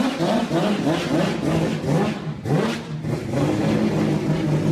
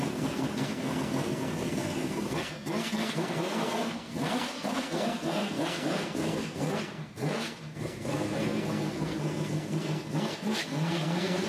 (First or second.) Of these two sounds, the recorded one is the first